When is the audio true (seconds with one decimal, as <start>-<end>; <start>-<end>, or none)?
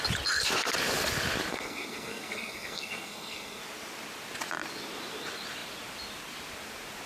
0.0-1.5; 3.6-7.1